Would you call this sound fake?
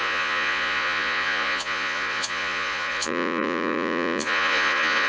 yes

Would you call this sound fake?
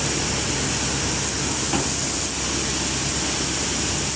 no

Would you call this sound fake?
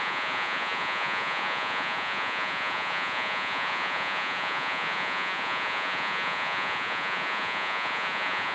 yes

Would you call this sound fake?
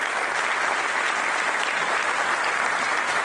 no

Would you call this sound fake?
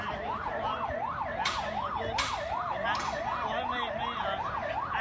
no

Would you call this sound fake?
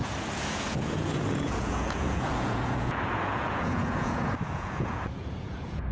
yes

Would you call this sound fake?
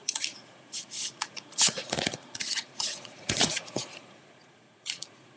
yes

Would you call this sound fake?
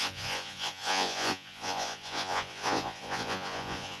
yes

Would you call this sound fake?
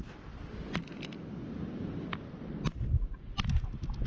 no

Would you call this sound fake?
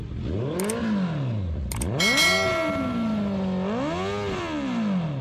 no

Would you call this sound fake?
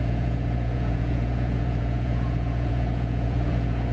yes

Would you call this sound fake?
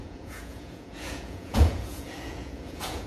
yes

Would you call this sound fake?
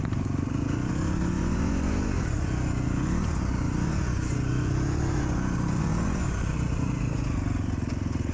yes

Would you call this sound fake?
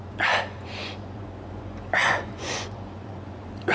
yes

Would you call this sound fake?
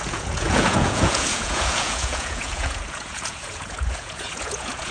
yes